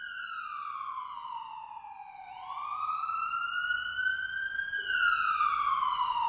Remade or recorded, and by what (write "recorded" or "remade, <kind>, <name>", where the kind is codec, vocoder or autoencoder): recorded